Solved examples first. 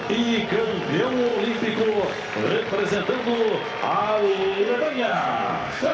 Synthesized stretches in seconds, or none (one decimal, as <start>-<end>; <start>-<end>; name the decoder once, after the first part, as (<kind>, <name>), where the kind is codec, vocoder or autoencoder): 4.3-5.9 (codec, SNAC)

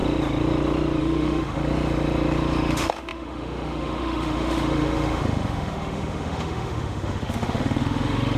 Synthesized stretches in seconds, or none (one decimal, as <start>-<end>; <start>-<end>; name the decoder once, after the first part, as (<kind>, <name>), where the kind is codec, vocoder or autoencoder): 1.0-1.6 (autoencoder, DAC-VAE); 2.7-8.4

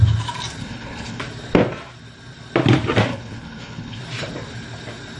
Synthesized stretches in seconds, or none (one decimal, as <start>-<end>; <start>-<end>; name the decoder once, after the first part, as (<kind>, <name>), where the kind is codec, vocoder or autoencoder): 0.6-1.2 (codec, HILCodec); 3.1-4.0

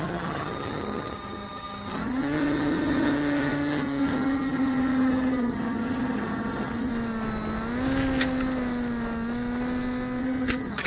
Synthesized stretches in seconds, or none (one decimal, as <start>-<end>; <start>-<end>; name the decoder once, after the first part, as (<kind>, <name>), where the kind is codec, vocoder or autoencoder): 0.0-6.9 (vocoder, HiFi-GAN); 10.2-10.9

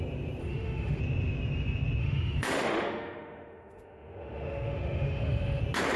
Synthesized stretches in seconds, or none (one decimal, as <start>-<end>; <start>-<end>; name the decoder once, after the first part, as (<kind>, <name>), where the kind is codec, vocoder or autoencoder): 0.4-1.0 (autoencoder, DAC-VAE); 2.0-5.6

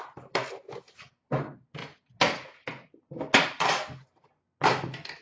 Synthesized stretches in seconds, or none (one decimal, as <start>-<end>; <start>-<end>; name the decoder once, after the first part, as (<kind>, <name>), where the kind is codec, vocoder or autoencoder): none